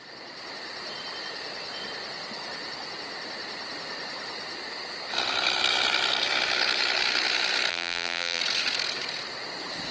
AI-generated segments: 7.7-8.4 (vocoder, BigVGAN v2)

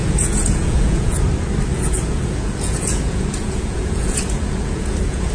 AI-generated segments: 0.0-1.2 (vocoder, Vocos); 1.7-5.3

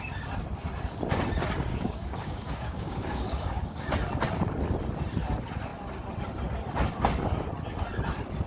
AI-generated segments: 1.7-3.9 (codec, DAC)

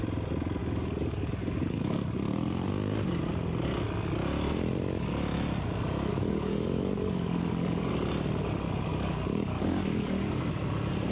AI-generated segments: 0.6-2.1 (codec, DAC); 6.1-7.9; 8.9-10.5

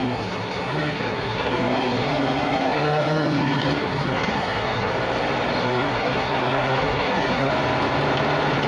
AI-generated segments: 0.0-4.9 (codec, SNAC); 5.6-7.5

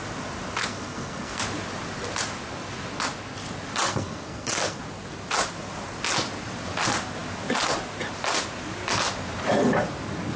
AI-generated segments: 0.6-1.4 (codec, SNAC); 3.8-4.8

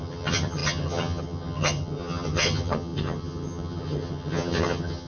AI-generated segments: 0.0-5.1 (vocoder, HiFi-GAN)

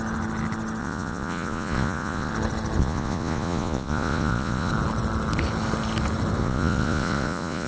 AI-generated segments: 0.8-2.3 (vocoder, Vocos); 2.8-4.7; 6.4-7.7